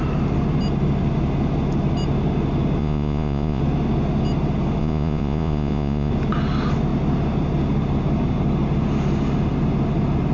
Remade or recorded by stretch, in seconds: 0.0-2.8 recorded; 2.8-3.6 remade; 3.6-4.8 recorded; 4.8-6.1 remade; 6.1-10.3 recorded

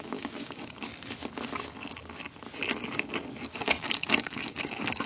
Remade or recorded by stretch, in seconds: 0.0-0.9 remade; 0.9-3.4 recorded; 3.4-5.1 remade

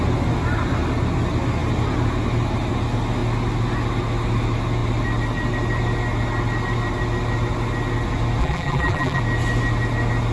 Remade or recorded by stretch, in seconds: 0.0-8.4 recorded; 8.4-9.2 remade; 9.2-10.3 recorded